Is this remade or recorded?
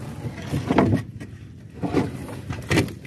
recorded